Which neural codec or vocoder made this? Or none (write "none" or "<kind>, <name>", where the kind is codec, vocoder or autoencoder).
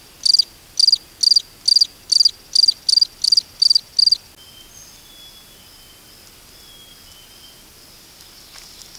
none